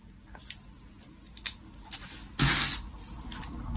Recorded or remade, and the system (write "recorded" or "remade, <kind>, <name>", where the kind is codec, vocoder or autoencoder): recorded